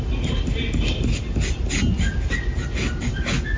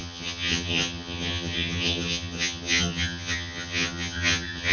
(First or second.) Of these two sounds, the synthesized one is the second